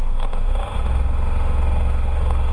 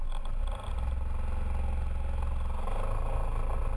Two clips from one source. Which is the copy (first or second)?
first